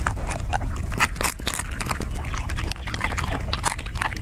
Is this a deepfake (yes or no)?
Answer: no